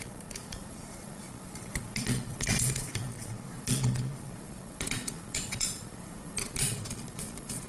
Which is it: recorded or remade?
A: remade